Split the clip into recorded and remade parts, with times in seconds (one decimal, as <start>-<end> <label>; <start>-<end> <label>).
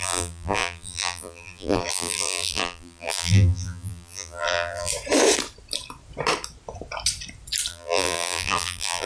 0.0-4.9 remade; 4.9-7.7 recorded; 7.7-9.1 remade